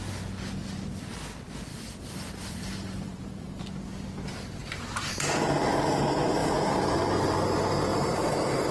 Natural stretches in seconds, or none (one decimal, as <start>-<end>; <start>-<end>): 0.0-1.7; 3.6-6.4; 7.1-7.9